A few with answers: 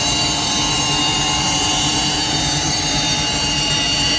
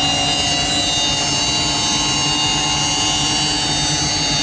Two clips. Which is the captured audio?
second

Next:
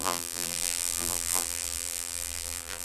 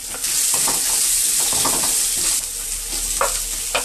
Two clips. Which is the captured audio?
second